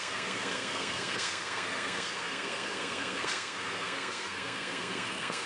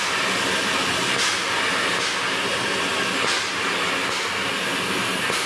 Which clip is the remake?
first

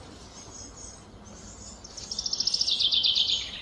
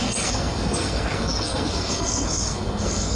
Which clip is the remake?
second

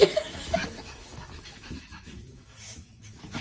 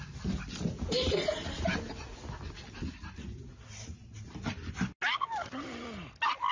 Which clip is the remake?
first